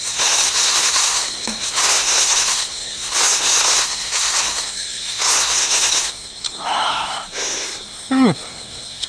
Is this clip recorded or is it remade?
remade